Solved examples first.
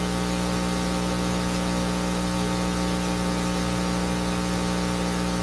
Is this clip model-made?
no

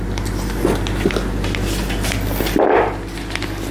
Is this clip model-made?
no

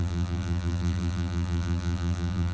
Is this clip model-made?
yes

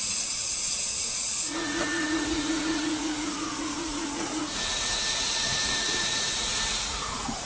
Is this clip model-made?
yes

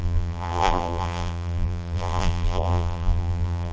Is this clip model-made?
yes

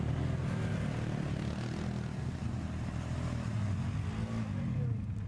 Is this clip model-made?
no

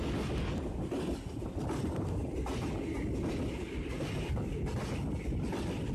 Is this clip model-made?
no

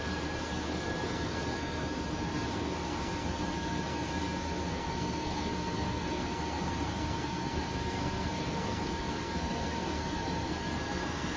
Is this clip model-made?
yes